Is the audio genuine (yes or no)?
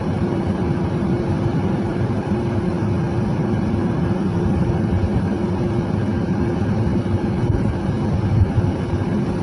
no